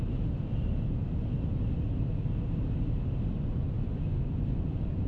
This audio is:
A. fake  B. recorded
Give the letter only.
B